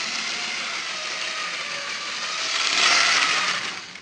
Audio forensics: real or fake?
fake